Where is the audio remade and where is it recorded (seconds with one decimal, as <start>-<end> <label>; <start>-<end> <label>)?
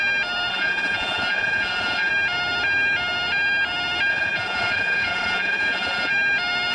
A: 0.0-0.5 recorded; 0.5-2.1 remade; 2.1-4.1 recorded; 4.1-6.1 remade; 6.1-6.7 recorded